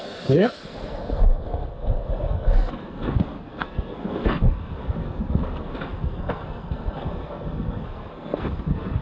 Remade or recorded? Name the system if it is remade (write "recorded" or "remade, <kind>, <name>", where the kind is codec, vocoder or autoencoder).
remade, codec, SNAC